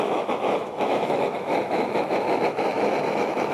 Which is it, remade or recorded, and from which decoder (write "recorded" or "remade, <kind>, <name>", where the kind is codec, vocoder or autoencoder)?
remade, autoencoder, DAC-VAE